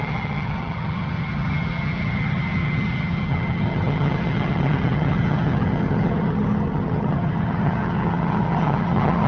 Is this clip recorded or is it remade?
remade